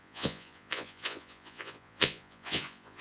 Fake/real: fake